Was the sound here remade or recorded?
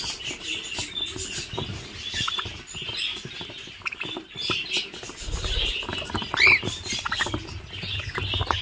recorded